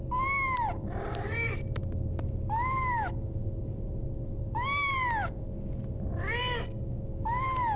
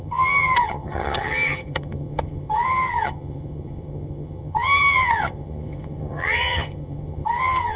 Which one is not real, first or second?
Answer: second